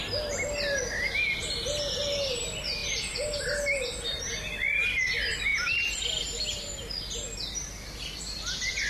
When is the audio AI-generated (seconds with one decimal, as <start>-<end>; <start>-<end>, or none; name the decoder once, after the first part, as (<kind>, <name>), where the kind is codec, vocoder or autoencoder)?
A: 5.5-8.2 (vocoder, BigVGAN v2)